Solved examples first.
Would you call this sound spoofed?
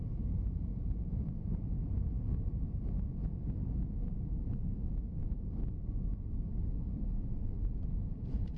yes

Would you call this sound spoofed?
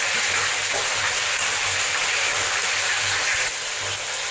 yes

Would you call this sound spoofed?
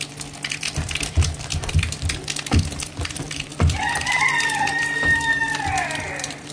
yes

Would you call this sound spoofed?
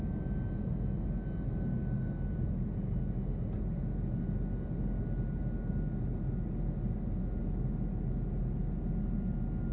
no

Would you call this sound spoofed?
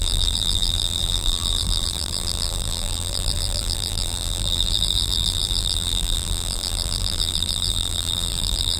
yes